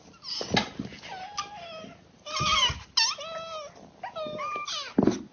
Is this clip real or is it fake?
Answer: real